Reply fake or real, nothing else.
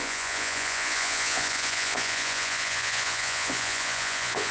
fake